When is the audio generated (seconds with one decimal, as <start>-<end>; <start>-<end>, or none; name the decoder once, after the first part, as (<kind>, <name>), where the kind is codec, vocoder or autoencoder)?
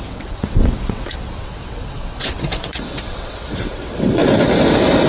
0.0-4.2 (vocoder, WaveNeXt)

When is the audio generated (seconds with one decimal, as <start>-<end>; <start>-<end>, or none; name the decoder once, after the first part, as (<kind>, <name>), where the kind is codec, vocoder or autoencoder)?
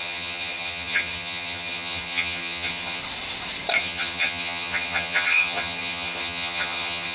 0.0-3.0 (vocoder, HiFi-GAN); 3.8-7.1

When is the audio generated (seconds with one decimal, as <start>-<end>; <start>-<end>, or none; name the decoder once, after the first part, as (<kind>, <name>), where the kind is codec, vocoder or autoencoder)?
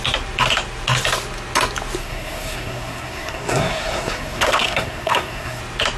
2.0-5.6 (codec, SNAC)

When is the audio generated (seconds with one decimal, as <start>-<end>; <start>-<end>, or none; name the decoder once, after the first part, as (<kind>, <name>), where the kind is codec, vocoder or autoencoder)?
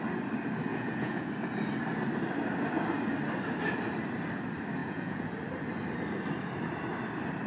0.7-1.3 (vocoder, Vocos); 4.8-5.3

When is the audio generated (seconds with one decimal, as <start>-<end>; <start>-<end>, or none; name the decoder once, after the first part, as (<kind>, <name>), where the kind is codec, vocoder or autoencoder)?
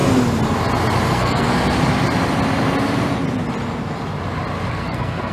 1.1-1.5 (codec, SNAC); 4.7-5.3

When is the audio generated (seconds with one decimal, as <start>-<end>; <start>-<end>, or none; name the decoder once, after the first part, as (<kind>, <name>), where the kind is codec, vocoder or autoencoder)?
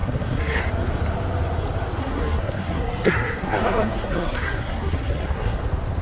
0.0-0.6 (codec, SNAC); 2.0-5.6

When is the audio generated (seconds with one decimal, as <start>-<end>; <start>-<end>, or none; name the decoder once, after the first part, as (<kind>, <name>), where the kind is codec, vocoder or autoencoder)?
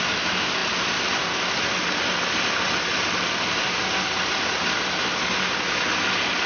none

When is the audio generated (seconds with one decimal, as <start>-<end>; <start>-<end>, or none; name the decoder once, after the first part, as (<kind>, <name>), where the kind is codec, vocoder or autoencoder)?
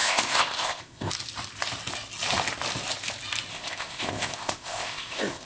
0.0-1.1 (codec, ZipCodec); 3.5-5.5